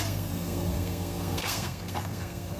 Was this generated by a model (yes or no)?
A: yes